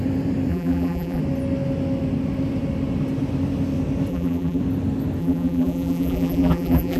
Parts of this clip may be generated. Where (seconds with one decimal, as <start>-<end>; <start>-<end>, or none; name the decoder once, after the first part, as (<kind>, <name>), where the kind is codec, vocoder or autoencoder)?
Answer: 0.5-1.2 (vocoder, BigVGAN v2); 4.1-4.6; 5.2-7.0

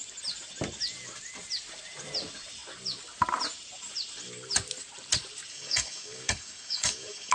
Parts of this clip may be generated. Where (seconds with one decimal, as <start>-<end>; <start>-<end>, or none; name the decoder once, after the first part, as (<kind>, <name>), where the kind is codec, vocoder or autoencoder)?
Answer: 5.5-7.3 (codec, DAC)